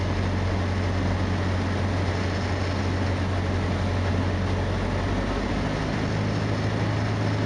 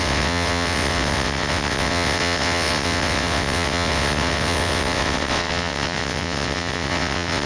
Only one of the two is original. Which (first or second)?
first